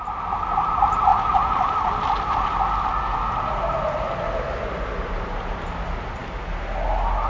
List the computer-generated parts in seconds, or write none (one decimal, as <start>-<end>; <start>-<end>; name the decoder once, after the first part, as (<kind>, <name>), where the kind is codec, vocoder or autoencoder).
none

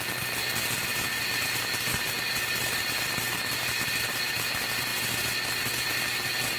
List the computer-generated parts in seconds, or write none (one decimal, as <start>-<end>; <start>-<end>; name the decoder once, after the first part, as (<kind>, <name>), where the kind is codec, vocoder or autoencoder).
none

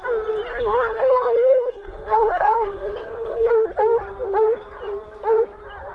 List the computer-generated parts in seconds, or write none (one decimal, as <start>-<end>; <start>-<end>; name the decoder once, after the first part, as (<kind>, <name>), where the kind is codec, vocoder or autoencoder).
0.5-3.5 (codec, SNAC)

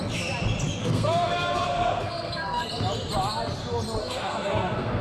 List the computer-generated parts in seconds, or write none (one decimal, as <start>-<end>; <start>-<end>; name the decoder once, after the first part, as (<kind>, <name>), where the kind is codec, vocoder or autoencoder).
0.8-2.6 (codec, SNAC); 4.0-5.0

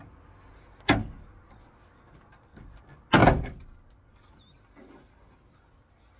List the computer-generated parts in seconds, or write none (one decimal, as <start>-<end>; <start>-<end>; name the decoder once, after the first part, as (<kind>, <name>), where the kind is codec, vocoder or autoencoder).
none

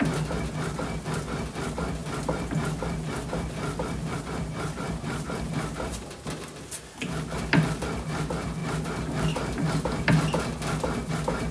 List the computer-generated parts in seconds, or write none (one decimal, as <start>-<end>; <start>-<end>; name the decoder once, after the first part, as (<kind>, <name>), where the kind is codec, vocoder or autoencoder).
none

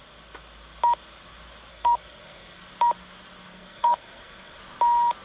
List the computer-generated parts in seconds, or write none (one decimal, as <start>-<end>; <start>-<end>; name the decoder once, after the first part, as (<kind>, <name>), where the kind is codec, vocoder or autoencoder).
1.7-2.6 (codec, SNAC); 3.5-4.6